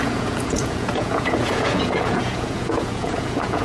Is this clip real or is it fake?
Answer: fake